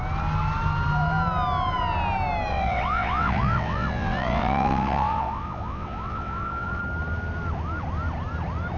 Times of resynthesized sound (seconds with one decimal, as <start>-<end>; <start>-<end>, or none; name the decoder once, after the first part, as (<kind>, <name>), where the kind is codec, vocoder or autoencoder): 2.5-6.8 (vocoder, WaveNeXt)

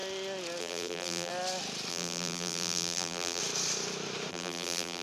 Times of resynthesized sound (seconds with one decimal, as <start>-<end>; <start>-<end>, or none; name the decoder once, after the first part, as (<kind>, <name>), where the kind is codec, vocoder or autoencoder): 0.6-1.3 (vocoder, BigVGAN v2); 1.9-3.4; 4.3-5.0